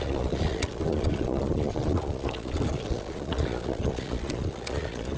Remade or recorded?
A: remade